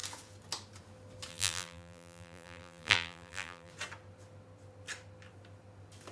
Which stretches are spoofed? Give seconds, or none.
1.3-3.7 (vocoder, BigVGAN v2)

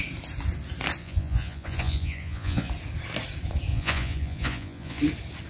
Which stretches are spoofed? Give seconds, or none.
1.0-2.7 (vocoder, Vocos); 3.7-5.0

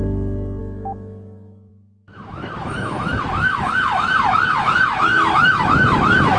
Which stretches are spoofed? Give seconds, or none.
0.6-6.4 (autoencoder, DAC-VAE)